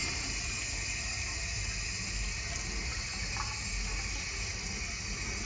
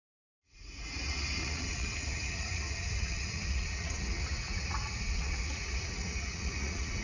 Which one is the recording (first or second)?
first